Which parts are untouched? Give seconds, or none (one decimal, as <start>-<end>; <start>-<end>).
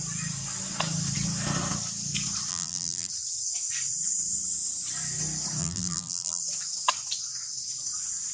0.0-2.5; 3.1-5.6; 6.4-8.3